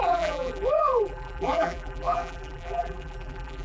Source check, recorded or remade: remade